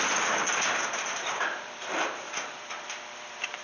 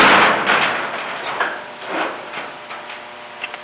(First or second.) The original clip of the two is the second